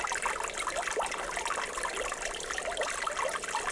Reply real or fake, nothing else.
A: real